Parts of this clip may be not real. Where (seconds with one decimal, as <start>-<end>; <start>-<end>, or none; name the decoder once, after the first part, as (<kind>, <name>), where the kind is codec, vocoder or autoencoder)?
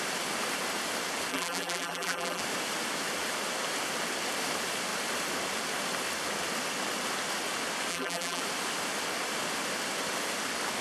1.3-2.4 (vocoder, BigVGAN v2); 7.9-8.4